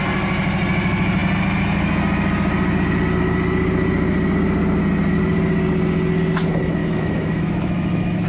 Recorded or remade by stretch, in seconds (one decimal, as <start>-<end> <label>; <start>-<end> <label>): 0.0-6.8 recorded; 6.8-8.3 remade